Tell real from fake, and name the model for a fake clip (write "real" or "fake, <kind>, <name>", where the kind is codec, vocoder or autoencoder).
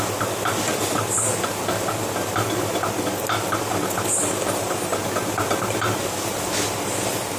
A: real